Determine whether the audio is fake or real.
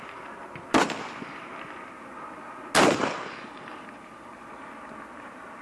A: real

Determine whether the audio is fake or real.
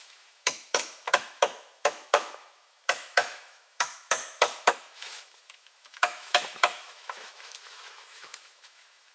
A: fake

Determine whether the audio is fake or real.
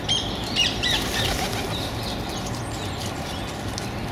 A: real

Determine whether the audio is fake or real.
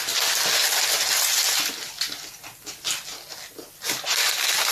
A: real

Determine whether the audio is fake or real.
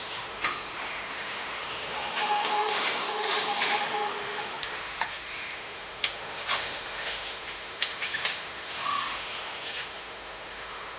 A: fake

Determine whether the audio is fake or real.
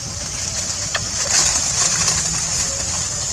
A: real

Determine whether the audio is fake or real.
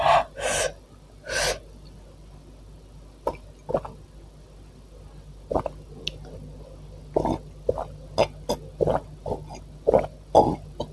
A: real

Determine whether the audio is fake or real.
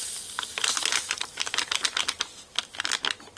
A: real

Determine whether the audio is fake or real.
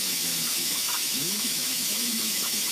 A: fake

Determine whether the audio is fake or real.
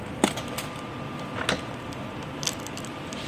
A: real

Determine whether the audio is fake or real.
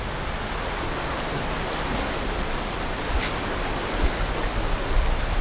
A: real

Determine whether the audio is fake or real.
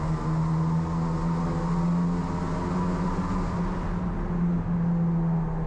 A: real